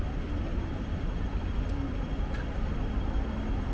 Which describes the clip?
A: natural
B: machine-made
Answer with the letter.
A